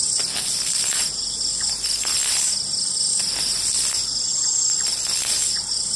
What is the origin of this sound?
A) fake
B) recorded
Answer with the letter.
B